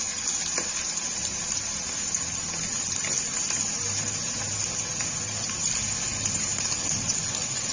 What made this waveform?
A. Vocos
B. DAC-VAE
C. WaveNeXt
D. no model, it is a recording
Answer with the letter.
D